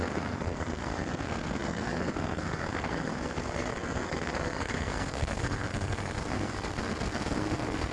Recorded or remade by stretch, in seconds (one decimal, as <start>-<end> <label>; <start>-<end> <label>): 0.0-7.9 remade